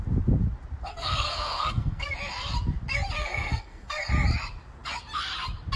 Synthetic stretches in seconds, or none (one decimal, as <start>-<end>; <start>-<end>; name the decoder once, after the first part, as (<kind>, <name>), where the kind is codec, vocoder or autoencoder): 0.9-2.1 (codec, SNAC); 3.2-4.1